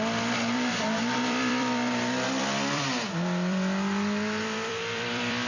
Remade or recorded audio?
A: remade